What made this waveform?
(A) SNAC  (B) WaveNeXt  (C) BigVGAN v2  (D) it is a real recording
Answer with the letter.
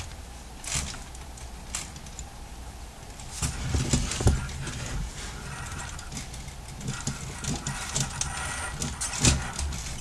D